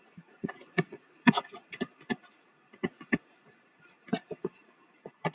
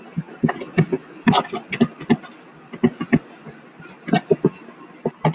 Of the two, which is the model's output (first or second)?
first